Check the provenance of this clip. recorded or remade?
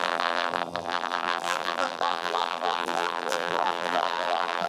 remade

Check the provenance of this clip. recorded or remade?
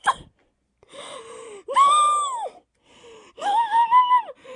recorded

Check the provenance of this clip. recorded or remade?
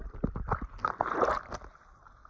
recorded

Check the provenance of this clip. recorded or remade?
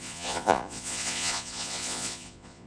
remade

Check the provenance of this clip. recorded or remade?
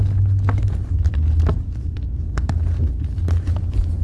recorded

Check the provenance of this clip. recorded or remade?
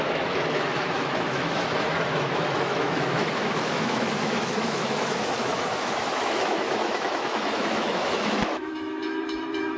remade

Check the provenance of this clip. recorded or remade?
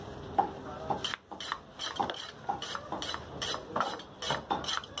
recorded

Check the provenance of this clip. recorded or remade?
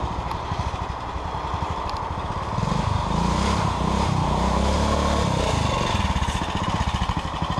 recorded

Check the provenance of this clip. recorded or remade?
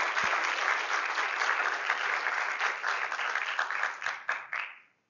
recorded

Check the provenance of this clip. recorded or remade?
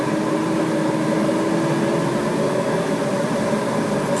recorded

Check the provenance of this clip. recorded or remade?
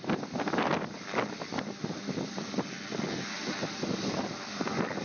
recorded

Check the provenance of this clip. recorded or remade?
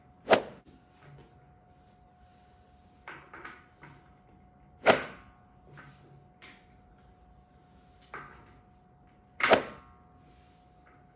recorded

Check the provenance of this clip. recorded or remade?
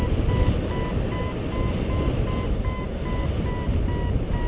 recorded